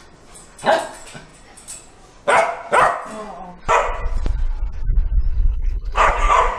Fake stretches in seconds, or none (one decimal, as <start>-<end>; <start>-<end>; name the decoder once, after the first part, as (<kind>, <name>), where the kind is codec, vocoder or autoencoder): 5.3-6.1 (codec, HILCodec)